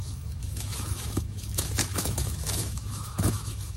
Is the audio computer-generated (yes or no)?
yes